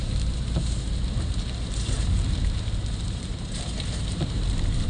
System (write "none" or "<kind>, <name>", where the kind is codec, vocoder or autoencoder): vocoder, BigVGAN v2